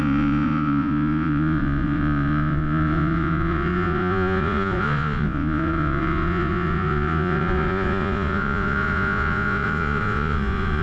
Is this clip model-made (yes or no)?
yes